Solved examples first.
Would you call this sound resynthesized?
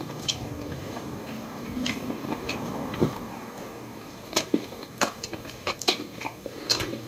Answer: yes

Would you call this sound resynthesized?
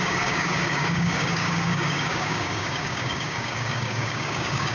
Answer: yes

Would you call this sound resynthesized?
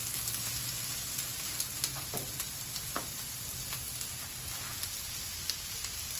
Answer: no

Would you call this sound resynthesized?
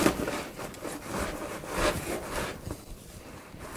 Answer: no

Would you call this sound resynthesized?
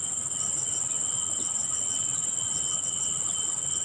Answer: no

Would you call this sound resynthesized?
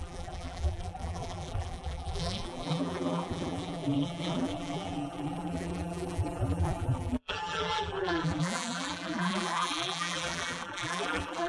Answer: yes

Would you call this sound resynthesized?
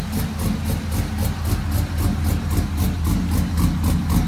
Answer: no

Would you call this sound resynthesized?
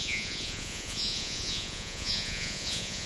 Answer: yes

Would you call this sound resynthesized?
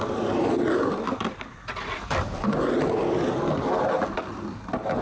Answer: no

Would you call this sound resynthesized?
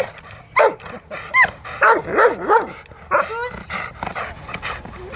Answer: no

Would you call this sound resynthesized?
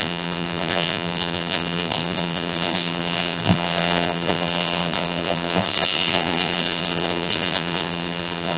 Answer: yes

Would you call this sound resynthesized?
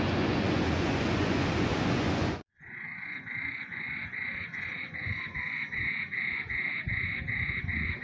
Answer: yes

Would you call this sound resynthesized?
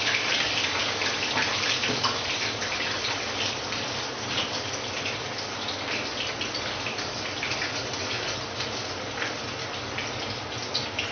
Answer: no